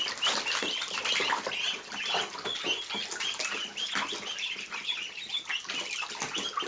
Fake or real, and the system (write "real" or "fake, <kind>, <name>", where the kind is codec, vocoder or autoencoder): real